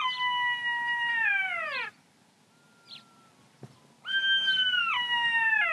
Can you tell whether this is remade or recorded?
recorded